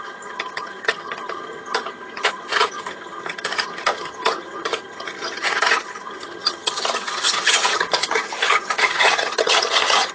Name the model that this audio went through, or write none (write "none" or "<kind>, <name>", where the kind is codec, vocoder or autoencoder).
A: vocoder, HiFi-GAN